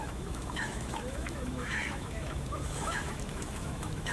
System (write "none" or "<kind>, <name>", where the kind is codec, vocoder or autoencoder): autoencoder, DAC-VAE